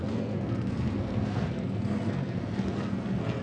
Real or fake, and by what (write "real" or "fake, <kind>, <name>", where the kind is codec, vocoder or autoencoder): fake, codec, SNAC